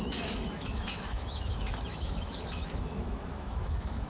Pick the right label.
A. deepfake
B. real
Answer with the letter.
A